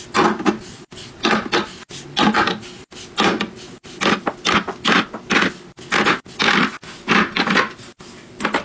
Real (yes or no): yes